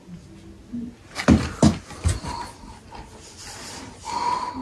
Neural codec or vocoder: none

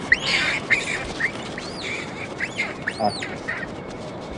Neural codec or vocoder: vocoder, BigVGAN v2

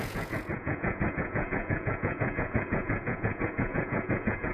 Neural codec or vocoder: vocoder, Vocos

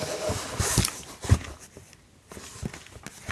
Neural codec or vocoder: none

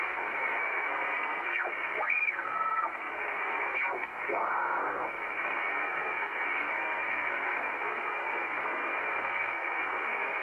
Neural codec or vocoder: codec, SNAC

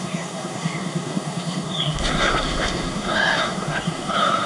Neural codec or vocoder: codec, SNAC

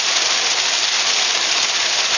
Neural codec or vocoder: none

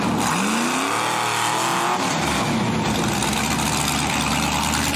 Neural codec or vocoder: none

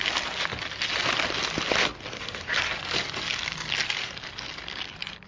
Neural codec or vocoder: none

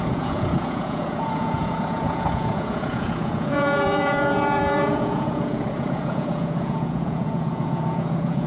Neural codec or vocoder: vocoder, Vocos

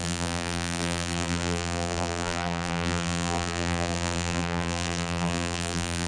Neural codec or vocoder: vocoder, BigVGAN v2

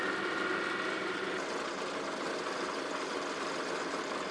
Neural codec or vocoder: none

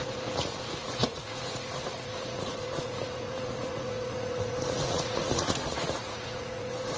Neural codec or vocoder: vocoder, Vocos